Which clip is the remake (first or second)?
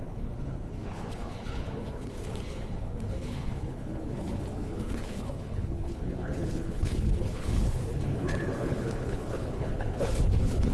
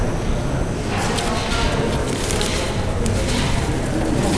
first